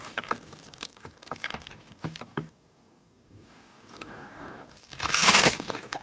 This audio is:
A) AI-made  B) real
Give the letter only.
A